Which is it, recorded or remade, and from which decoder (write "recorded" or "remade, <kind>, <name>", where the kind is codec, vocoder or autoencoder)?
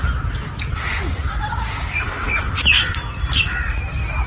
recorded